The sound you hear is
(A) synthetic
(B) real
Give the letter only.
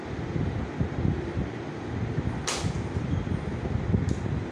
B